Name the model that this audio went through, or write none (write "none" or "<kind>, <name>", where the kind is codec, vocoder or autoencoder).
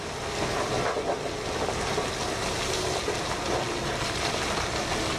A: none